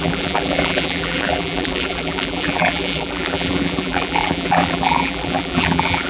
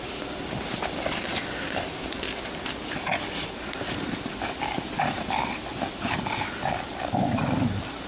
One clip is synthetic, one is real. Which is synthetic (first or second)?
first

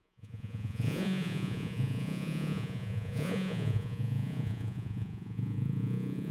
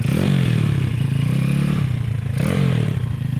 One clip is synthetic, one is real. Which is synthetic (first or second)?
first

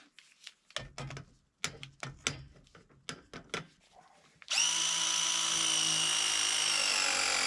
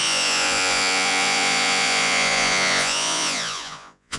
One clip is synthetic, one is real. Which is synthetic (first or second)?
second